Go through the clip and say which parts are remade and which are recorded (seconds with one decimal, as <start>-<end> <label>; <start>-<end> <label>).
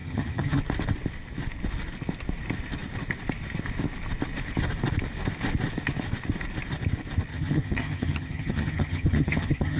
0.0-0.6 remade; 0.6-7.3 recorded; 7.3-9.8 remade